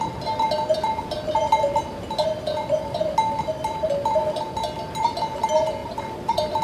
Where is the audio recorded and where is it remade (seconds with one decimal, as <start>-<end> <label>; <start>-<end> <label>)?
0.0-5.8 recorded; 5.8-6.6 remade